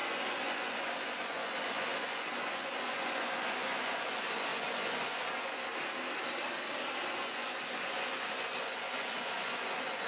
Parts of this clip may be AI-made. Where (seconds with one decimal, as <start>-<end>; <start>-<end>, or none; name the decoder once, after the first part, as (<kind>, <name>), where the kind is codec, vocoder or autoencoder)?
0.0-5.7 (vocoder, Vocos); 7.1-10.1